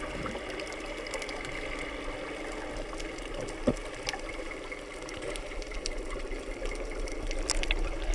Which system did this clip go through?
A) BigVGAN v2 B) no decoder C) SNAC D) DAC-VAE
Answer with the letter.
B